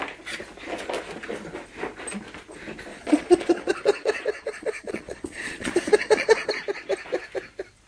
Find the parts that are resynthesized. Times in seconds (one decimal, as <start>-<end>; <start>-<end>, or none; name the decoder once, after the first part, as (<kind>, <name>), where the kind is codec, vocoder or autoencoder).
2.9-6.5 (vocoder, Vocos)